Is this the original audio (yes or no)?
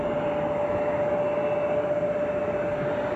yes